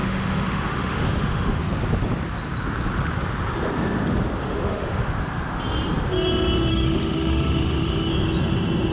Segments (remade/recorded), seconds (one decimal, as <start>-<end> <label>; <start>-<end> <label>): 0.0-1.6 remade; 1.6-4.4 recorded; 4.4-5.1 remade; 5.1-6.7 recorded; 6.7-8.1 remade; 8.1-8.9 recorded